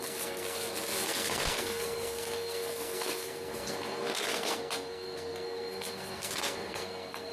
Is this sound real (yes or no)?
no